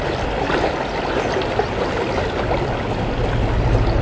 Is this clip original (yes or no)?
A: yes